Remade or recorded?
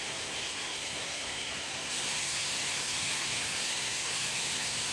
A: remade